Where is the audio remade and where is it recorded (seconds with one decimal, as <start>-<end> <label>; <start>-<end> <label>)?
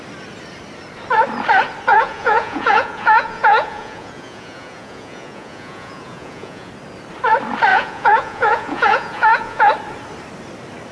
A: 0.0-1.9 recorded; 1.9-6.7 remade; 6.7-7.7 recorded; 7.7-9.7 remade; 9.7-10.9 recorded